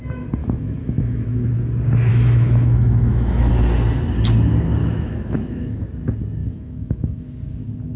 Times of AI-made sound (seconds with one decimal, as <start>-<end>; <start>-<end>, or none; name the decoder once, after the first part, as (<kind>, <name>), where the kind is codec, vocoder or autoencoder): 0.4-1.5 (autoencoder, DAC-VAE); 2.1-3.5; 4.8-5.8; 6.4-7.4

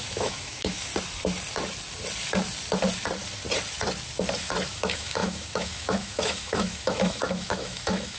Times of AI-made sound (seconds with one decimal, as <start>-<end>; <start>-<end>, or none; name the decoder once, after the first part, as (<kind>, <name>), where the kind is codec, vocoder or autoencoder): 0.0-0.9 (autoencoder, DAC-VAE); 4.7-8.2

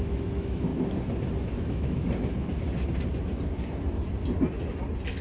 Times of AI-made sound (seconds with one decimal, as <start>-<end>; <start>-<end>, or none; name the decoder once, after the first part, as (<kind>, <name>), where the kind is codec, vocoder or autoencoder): 0.0-0.7 (autoencoder, DAC-VAE); 1.5-2.0

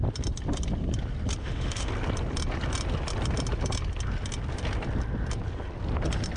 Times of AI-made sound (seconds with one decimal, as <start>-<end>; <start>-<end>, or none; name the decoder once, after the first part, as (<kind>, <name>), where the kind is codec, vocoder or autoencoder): 1.4-1.9 (autoencoder, DAC-VAE)

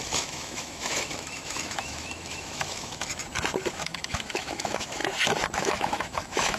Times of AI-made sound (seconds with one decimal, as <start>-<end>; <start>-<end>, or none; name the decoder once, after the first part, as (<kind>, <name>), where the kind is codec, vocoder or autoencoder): 0.0-3.1 (autoencoder, DAC-VAE); 3.7-5.0; 5.6-6.6

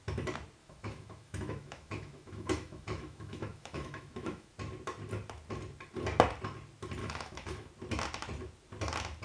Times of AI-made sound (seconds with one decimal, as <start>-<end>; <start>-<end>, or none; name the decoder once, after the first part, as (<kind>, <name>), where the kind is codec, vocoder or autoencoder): 0.6-4.5 (autoencoder, DAC-VAE); 7.0-7.7